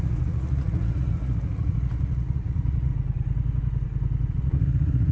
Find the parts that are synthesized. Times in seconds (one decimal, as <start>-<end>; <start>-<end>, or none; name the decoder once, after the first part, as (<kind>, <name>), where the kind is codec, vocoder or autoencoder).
0.0-2.9 (vocoder, Vocos); 4.3-5.1

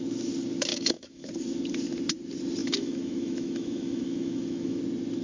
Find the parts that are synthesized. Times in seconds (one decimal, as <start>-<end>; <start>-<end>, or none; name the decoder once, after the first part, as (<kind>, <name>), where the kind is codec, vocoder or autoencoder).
0.7-1.3 (autoencoder, DAC-VAE); 2.6-4.8

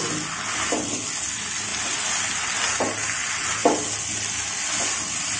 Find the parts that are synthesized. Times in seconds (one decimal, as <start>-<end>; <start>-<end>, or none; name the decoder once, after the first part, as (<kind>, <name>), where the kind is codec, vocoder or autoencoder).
none

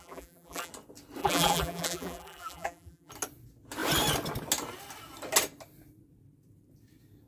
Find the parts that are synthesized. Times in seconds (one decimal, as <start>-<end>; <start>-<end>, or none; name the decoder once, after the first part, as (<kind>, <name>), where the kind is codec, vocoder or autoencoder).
0.0-0.7 (vocoder, BigVGAN v2); 1.2-3.1

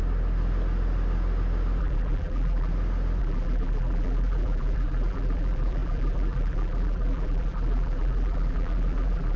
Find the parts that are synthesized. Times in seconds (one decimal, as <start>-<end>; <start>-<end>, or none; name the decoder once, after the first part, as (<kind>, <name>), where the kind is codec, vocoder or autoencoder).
1.8-2.7 (vocoder, BigVGAN v2); 3.2-9.4